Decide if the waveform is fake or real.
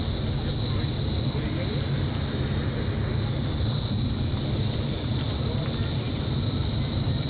real